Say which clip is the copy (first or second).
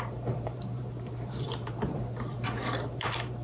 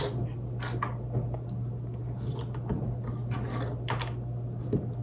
first